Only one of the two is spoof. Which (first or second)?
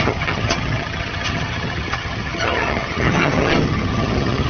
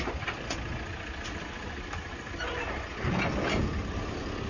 first